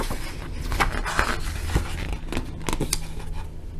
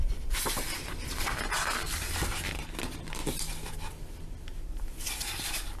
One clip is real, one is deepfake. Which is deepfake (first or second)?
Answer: second